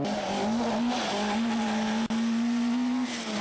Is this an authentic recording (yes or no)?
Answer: yes